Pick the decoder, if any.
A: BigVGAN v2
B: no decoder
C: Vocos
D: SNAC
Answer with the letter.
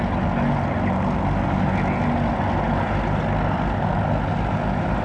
B